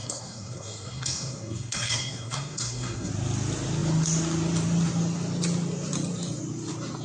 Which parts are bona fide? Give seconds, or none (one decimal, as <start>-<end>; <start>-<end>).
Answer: 3.1-7.0